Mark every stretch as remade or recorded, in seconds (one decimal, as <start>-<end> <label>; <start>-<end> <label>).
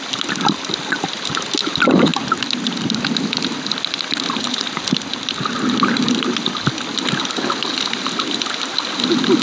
0.0-9.4 recorded